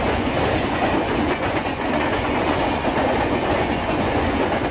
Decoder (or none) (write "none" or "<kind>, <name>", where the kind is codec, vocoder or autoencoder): vocoder, Vocos